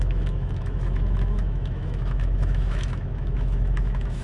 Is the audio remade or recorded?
remade